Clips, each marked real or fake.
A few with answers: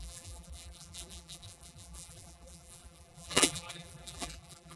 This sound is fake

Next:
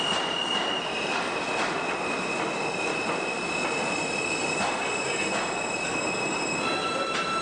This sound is real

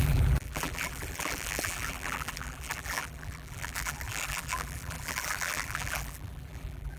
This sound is fake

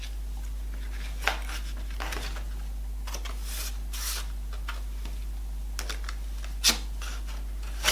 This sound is real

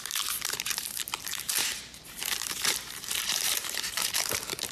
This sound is fake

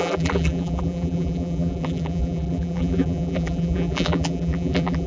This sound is fake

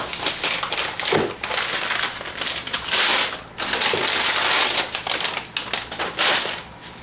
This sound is real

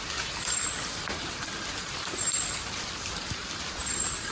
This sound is fake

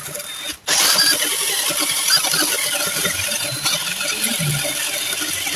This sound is fake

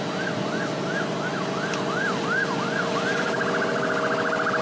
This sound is real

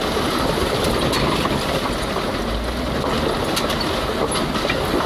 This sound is real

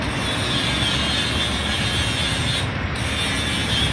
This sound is real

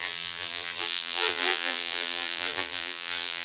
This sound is fake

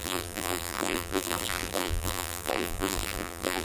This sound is fake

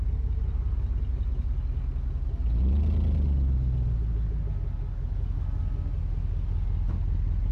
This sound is real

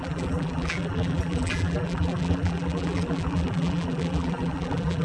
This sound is fake